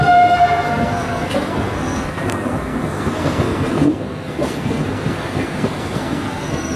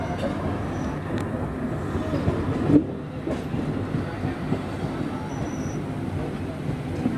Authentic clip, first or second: second